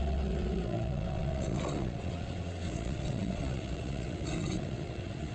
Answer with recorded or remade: remade